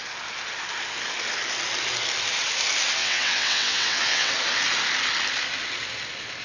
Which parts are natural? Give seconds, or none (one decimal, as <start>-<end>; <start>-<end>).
0.0-3.0; 4.3-6.4